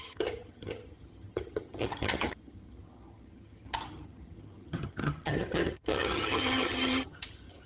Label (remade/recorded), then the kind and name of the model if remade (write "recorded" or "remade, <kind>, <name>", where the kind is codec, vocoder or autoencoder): remade, vocoder, HiFi-GAN